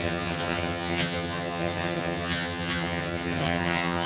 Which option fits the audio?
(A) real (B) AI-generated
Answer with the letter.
B